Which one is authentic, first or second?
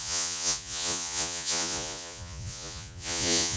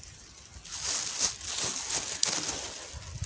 second